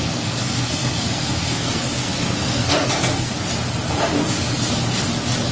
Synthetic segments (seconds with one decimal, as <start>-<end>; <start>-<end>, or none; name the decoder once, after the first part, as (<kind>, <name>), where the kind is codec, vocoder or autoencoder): 0.0-3.3 (codec, SNAC); 4.2-4.7